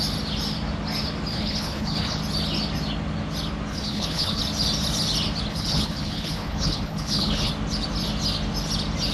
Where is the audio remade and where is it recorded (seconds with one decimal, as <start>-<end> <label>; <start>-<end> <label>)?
0.0-1.3 recorded; 1.3-2.2 remade; 2.2-3.7 recorded; 3.7-4.4 remade; 4.4-5.5 recorded; 5.5-7.5 remade; 7.5-9.1 recorded